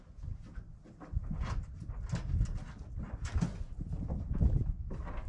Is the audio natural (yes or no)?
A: yes